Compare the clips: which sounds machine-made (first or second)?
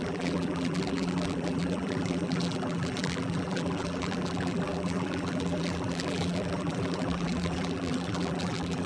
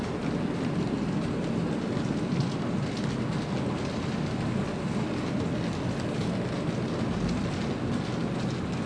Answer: first